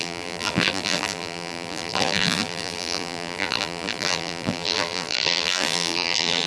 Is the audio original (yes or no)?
no